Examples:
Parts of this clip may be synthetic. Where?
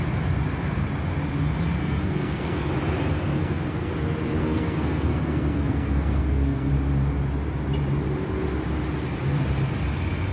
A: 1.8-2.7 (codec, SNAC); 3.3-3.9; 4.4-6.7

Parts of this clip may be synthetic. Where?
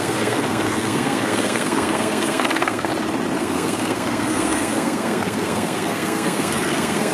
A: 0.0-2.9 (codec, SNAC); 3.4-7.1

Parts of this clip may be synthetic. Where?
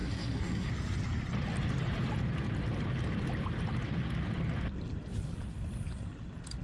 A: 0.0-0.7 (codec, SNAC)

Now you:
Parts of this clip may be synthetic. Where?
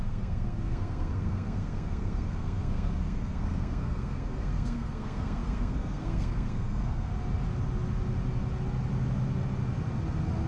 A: 0.0-7.1 (codec, SNAC)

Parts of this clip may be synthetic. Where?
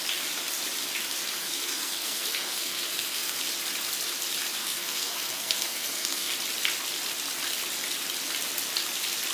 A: 1.4-3.4 (codec, SNAC); 4.6-6.3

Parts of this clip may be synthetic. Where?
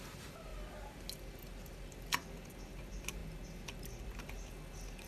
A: none